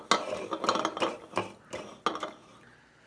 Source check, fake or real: real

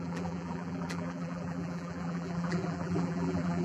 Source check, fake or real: fake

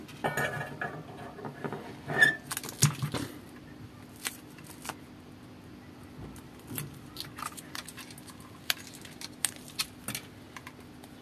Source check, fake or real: real